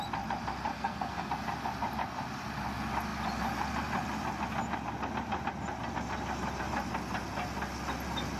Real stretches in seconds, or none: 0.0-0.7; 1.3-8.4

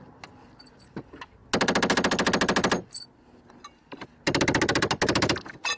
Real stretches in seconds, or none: 0.0-5.8

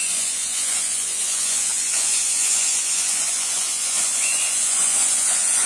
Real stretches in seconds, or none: none

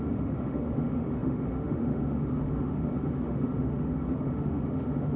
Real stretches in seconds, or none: none